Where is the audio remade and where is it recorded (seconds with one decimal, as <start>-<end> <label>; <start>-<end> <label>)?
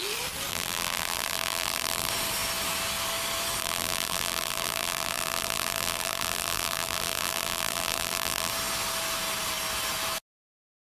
0.0-0.5 recorded; 0.5-2.1 remade; 2.1-3.6 recorded; 3.6-8.5 remade; 8.5-10.9 recorded